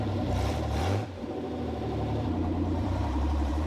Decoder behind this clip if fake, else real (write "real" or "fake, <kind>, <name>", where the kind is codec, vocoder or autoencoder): fake, vocoder, BigVGAN v2